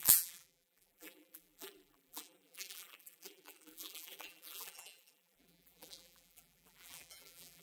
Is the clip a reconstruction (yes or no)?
yes